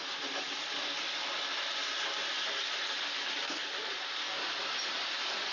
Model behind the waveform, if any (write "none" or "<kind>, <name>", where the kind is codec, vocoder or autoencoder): none